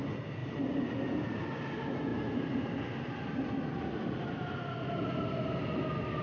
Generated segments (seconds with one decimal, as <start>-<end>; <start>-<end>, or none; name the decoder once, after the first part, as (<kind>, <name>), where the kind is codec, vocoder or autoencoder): none